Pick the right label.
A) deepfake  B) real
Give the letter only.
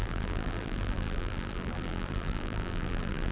A